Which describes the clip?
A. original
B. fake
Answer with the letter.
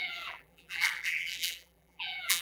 B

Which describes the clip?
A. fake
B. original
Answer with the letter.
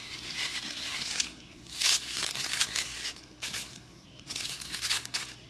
A